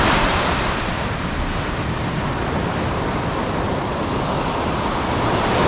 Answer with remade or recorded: recorded